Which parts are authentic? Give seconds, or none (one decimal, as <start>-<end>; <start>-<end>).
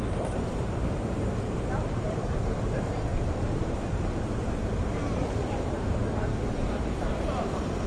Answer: 6.0-7.0